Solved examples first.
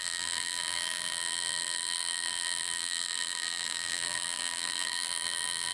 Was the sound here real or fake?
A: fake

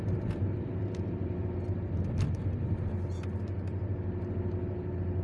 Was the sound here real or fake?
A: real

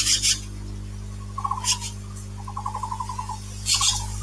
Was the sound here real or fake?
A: real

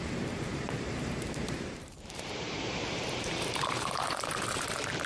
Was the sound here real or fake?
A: fake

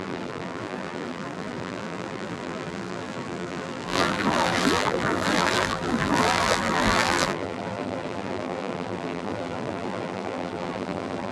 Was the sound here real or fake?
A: fake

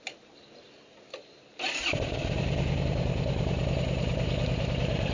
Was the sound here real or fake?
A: fake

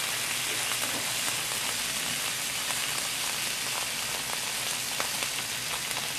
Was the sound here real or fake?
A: real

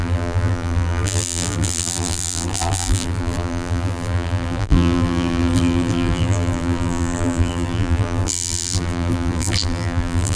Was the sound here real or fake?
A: fake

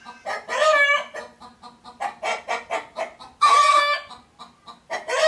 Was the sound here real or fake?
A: real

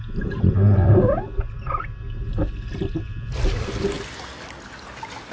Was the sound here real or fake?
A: real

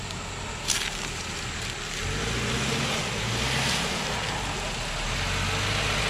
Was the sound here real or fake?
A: real